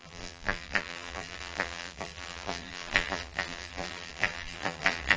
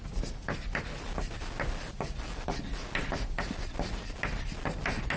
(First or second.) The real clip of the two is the second